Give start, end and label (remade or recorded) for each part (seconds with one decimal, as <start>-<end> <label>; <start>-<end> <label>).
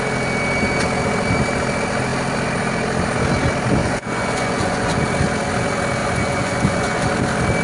0.0-3.8 recorded; 3.8-5.0 remade; 5.0-6.0 recorded; 6.0-7.1 remade; 7.1-7.6 recorded